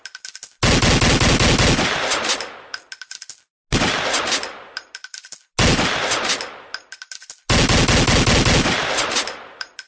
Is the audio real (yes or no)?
yes